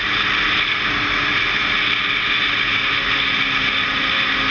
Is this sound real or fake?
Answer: real